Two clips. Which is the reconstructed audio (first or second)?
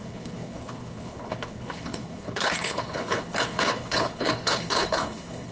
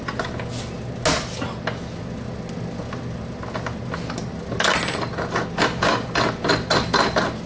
first